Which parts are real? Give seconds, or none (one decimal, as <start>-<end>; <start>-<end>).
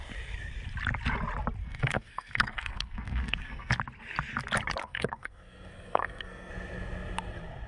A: 0.0-1.6; 3.7-4.8; 6.5-7.7